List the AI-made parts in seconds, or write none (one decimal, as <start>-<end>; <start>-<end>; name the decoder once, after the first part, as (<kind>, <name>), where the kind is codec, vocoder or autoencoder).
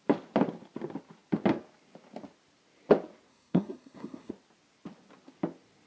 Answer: 3.3-4.3 (codec, SNAC)